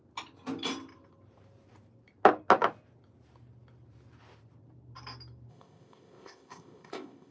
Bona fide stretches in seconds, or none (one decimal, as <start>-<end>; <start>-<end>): 0.0-5.5